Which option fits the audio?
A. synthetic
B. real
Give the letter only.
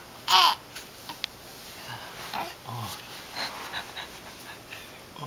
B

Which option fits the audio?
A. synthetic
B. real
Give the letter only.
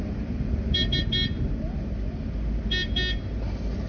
B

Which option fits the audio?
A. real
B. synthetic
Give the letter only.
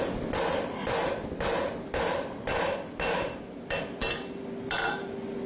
A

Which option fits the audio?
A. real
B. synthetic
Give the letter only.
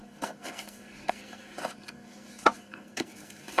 B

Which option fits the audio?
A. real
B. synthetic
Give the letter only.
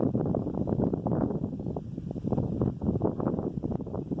A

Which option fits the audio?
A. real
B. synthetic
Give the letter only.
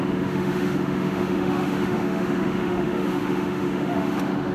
B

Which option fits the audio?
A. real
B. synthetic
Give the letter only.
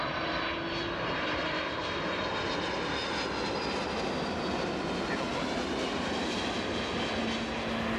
A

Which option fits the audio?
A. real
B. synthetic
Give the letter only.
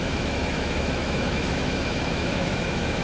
B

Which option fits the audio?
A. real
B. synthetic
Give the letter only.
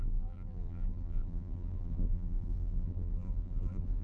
B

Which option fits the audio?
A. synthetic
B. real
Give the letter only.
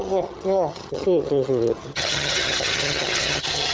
A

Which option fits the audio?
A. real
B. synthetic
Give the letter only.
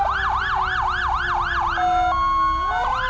A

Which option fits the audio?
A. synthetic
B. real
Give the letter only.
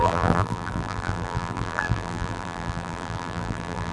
A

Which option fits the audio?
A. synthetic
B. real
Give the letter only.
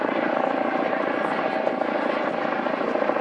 B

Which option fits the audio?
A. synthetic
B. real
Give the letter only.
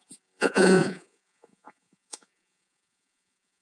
A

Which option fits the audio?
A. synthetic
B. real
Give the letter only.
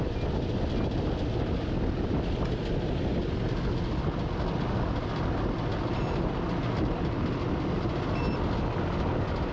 B